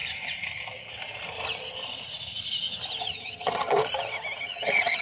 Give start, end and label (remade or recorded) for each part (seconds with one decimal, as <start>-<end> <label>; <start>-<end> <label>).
0.0-3.0 recorded; 3.0-3.8 remade; 3.8-4.4 recorded; 4.4-5.0 remade